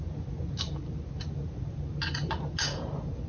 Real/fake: real